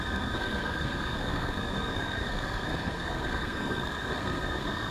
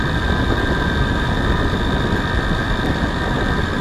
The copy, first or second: first